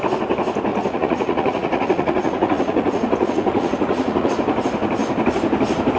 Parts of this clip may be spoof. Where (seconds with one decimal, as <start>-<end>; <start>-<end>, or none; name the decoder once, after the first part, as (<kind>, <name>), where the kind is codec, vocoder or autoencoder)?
0.7-4.3 (vocoder, Vocos)